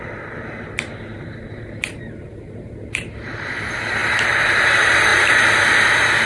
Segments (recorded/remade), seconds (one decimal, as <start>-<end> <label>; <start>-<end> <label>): 0.0-6.3 remade